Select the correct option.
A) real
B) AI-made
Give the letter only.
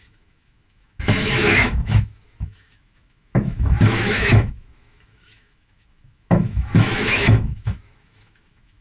B